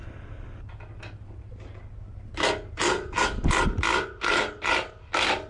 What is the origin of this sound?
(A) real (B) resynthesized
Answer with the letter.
A